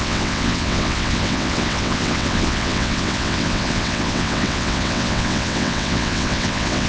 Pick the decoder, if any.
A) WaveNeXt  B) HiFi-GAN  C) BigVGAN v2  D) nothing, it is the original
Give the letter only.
A